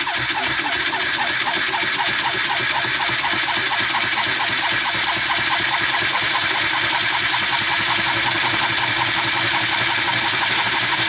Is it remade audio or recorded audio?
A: recorded